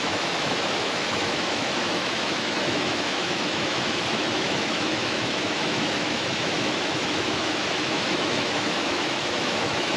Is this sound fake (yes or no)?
yes